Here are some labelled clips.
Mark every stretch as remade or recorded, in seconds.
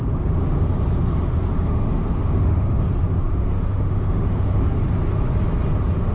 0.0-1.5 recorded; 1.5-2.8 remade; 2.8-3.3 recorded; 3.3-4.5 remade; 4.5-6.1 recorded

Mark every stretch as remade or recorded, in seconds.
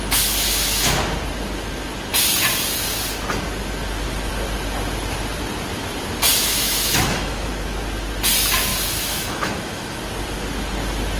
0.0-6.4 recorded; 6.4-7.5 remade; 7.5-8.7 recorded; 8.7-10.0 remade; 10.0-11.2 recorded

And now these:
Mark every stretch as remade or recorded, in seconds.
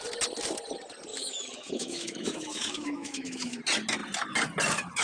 0.0-1.1 recorded; 1.1-3.6 remade; 3.6-5.0 recorded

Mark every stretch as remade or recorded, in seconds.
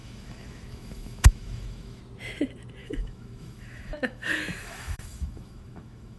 0.0-2.0 remade; 2.0-2.8 recorded; 2.8-6.2 remade